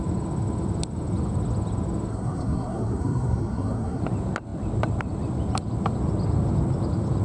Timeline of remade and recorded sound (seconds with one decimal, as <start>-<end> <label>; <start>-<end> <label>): 0.0-2.1 recorded; 2.1-4.0 remade; 4.0-7.2 recorded